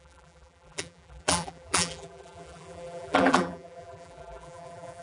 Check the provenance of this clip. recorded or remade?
remade